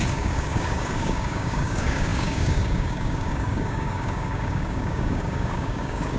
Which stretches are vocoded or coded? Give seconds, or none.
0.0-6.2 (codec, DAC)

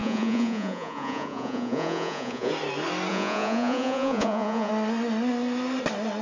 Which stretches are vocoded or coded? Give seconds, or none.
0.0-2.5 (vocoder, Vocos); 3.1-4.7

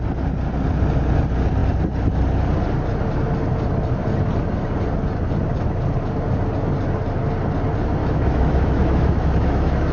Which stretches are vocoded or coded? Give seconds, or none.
8.0-9.9 (autoencoder, DAC-VAE)